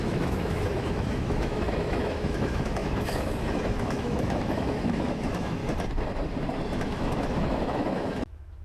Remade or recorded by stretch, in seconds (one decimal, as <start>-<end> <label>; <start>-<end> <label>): 0.0-5.6 remade; 5.6-6.8 recorded; 6.8-8.6 remade